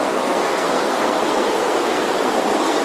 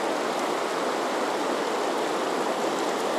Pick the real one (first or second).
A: second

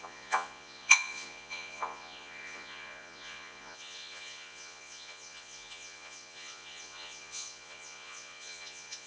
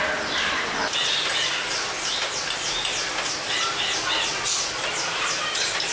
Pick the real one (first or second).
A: second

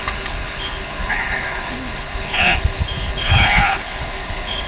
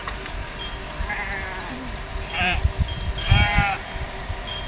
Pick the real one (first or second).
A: second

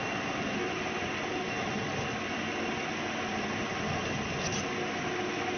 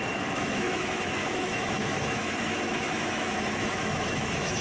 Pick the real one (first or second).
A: first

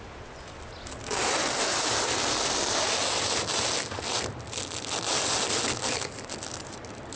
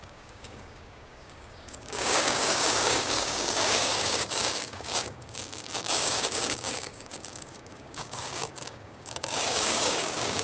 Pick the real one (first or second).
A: first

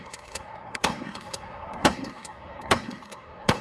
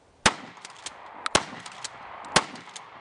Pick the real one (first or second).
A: second